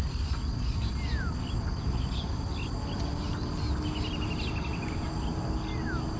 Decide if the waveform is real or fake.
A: real